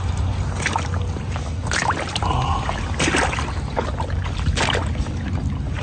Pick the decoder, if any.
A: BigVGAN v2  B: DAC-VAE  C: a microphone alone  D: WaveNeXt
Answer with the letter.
C